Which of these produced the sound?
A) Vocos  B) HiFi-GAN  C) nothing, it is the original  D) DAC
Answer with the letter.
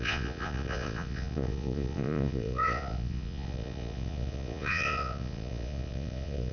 A